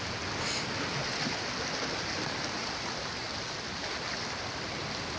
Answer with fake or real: real